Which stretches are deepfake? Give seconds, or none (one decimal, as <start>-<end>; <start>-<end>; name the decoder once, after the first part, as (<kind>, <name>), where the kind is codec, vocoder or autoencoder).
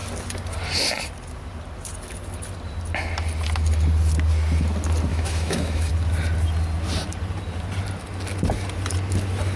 5.1-5.9 (autoencoder, DAC-VAE)